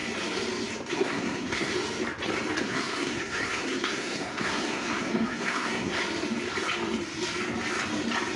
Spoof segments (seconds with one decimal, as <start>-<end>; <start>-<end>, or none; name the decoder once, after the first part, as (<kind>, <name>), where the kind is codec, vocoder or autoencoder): 0.9-1.7 (codec, SNAC); 2.6-6.0